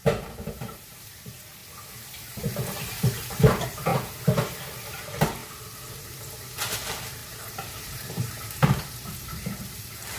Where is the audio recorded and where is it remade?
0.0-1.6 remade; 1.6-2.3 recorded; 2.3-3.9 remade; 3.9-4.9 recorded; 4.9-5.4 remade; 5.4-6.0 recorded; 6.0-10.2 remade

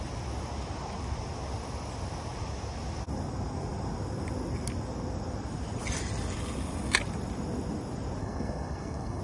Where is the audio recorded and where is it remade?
0.0-8.2 recorded; 8.2-9.2 remade

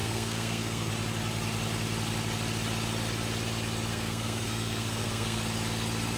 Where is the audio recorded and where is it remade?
0.0-0.9 remade; 0.9-3.9 recorded; 3.9-5.4 remade; 5.4-6.2 recorded

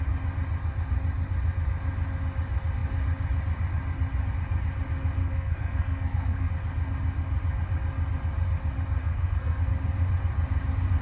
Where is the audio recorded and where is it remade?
0.0-5.2 recorded; 5.2-6.5 remade; 6.5-9.0 recorded; 9.0-9.6 remade; 9.6-11.0 recorded

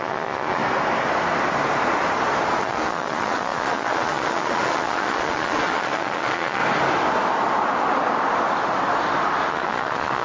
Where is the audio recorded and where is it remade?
0.0-0.6 remade; 0.6-2.6 recorded; 2.6-6.6 remade; 6.6-9.5 recorded; 9.5-10.2 remade